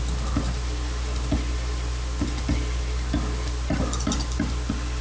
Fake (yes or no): no